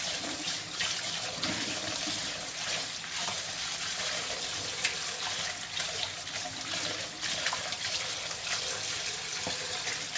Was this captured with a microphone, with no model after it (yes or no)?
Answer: yes